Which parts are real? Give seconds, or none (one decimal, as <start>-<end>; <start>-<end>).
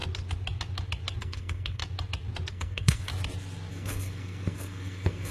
0.0-1.2; 1.8-2.5; 3.1-3.7